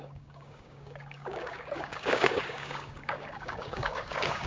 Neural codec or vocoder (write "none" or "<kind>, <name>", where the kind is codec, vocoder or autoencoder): codec, DAC